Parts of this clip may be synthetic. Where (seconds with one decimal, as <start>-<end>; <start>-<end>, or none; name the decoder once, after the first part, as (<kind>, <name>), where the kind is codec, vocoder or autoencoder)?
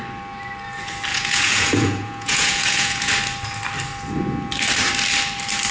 1.1-3.1 (vocoder, Vocos)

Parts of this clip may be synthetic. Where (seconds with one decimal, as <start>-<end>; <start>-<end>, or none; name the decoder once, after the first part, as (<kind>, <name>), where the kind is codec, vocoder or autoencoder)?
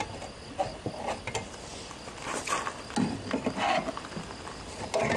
none